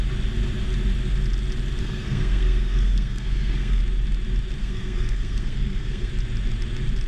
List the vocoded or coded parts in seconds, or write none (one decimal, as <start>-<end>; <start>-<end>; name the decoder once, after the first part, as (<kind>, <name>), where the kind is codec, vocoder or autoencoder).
1.8-3.8 (codec, SNAC); 4.6-6.1